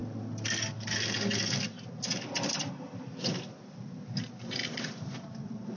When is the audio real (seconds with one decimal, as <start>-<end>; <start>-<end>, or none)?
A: 0.0-4.6